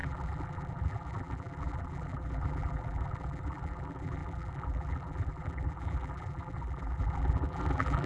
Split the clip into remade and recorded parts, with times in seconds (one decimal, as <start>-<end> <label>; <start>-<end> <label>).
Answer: 0.0-8.1 remade